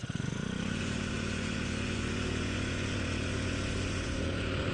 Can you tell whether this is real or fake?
fake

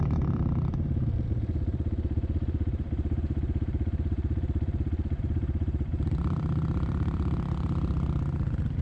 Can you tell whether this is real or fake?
fake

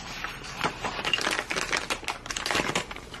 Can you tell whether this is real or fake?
real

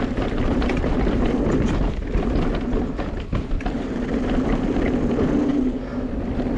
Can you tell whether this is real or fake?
real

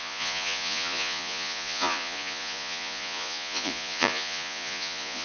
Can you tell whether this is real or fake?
fake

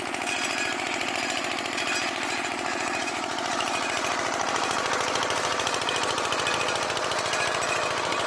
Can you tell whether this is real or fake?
real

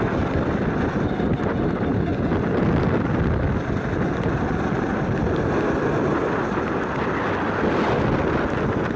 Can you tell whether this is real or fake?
real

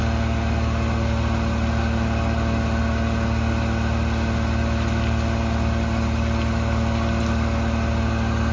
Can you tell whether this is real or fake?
real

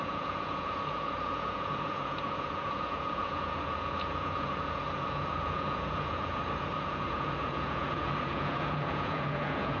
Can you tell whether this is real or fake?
fake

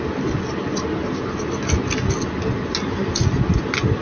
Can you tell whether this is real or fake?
real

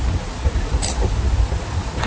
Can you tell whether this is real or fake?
real